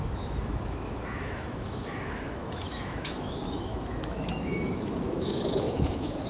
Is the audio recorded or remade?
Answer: remade